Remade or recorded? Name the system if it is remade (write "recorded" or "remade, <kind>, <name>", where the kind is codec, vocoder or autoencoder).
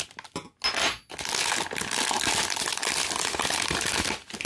recorded